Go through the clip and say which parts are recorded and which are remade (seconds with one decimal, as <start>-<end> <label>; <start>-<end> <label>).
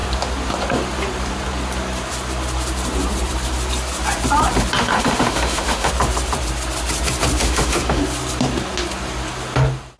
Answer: 0.0-4.8 recorded; 4.8-5.9 remade; 5.9-7.4 recorded; 7.4-8.0 remade; 8.0-10.0 recorded